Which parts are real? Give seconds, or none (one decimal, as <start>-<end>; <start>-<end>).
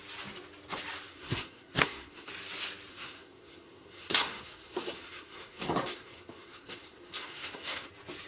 0.0-1.1; 2.3-2.9; 7.9-8.3